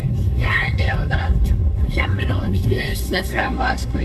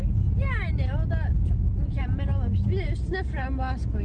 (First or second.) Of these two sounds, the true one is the second